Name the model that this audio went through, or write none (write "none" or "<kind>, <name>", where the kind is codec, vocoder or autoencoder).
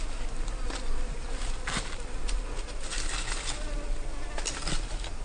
none